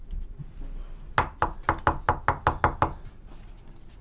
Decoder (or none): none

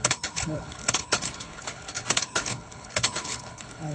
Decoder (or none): codec, HILCodec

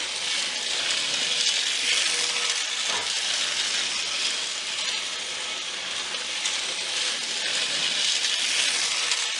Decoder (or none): none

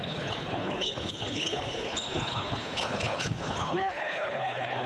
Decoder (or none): codec, HILCodec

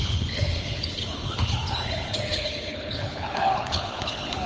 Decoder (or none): codec, HILCodec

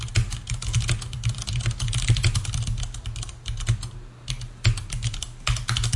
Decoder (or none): none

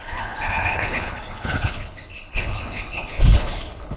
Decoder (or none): codec, HILCodec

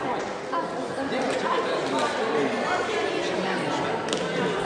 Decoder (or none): none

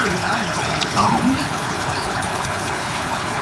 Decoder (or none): codec, HILCodec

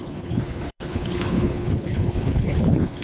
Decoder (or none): codec, HILCodec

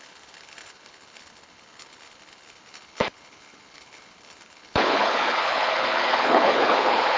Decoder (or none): codec, HILCodec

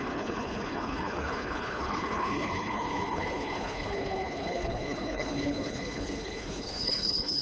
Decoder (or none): codec, HILCodec